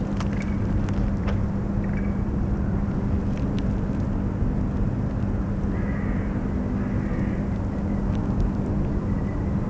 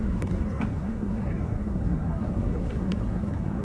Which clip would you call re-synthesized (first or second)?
second